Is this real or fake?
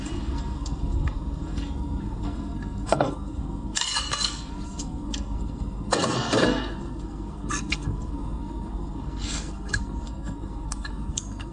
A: fake